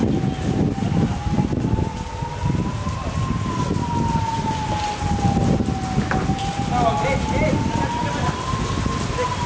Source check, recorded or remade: recorded